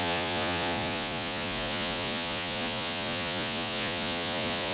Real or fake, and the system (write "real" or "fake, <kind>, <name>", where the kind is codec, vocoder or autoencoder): fake, vocoder, Vocos